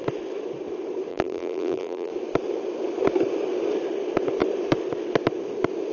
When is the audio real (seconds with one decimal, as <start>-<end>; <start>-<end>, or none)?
0.0-1.1; 2.1-5.9